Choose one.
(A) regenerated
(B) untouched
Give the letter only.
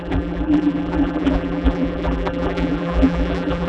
A